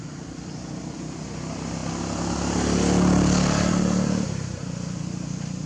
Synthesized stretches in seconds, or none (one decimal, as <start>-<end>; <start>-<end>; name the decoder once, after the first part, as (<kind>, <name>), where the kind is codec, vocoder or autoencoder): none